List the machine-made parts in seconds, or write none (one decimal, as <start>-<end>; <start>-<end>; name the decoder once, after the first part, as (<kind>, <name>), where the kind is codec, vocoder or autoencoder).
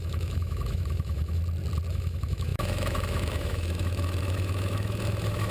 0.0-1.4 (autoencoder, DAC-VAE); 1.9-5.5